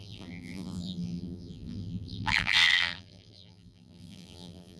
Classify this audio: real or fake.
fake